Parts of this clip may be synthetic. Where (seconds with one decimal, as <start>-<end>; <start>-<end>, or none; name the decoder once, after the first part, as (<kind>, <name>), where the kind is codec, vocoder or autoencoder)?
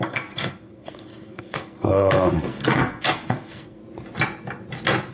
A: 0.0-3.8 (codec, SNAC)